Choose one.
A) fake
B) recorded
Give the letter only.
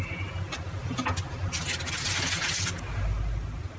B